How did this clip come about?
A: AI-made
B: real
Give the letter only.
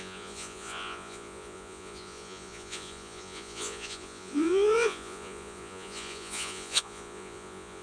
A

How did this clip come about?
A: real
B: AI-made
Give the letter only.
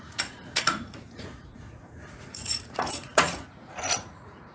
B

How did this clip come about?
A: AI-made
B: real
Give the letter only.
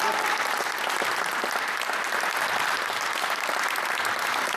B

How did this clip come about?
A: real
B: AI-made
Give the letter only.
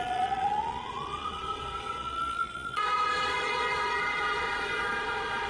B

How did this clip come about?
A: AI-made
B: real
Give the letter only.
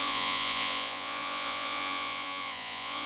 A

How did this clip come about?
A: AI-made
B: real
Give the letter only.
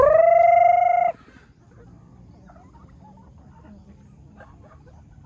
B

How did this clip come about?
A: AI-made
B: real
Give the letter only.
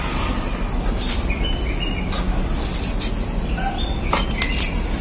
B